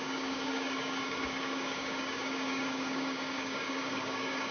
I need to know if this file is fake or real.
fake